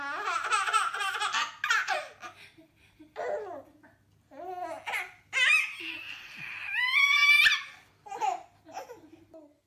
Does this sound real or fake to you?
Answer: real